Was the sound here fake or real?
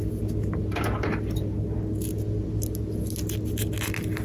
real